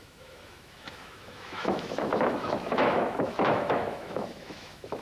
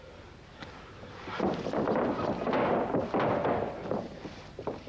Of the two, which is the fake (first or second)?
first